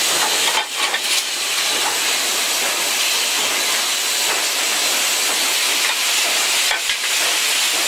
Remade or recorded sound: recorded